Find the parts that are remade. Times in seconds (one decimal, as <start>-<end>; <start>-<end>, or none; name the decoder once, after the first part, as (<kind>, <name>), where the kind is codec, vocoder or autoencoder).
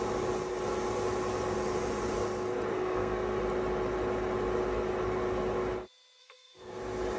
2.7-3.4 (codec, SNAC); 6.2-6.8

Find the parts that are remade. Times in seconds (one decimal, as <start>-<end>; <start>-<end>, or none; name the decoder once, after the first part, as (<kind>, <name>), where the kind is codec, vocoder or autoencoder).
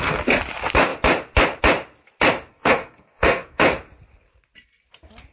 2.5-3.6 (codec, SNAC)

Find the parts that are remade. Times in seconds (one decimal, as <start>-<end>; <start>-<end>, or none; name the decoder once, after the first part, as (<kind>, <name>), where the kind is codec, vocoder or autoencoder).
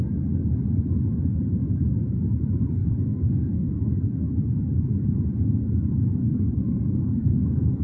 2.8-3.7 (codec, SNAC); 6.2-7.8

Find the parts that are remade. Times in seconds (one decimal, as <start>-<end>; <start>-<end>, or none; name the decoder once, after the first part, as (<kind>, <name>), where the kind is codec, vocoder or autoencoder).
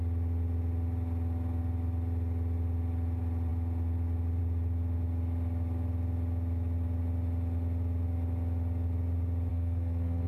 9.5-10.3 (codec, SNAC)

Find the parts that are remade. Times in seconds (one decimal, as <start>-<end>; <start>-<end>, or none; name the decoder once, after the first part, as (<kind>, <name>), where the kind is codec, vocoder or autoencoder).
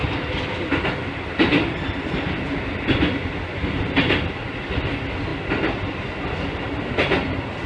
none